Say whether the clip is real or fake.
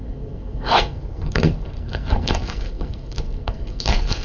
fake